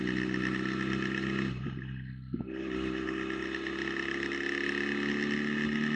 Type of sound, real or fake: real